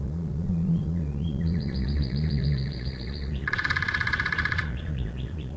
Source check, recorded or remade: remade